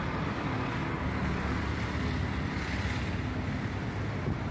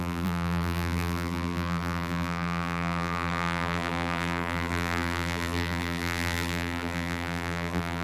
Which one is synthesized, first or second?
second